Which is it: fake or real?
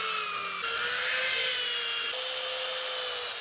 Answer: real